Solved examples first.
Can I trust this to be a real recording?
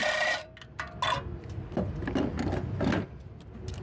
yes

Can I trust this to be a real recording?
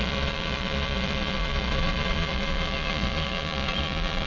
no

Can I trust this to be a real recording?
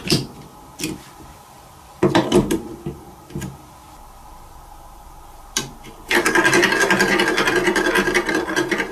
no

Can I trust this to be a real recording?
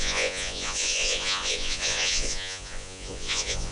no